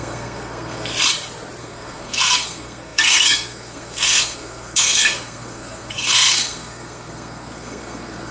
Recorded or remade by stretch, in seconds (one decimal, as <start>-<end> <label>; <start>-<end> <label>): 0.0-0.9 remade; 0.9-1.6 recorded; 1.6-8.3 remade